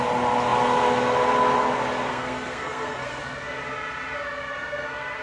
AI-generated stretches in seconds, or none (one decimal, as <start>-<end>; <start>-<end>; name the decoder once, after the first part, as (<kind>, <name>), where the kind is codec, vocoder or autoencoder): 2.1-3.2 (codec, SNAC); 4.5-5.2

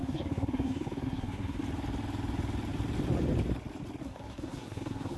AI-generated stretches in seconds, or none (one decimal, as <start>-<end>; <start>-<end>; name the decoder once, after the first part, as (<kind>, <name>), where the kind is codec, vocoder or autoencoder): 0.0-1.6 (codec, SNAC); 4.0-5.2

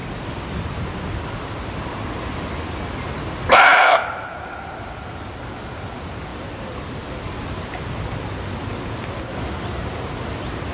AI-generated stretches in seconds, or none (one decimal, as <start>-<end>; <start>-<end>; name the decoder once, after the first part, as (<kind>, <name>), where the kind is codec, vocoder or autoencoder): none